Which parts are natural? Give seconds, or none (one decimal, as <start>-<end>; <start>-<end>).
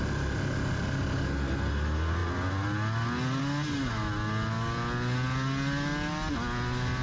0.0-7.0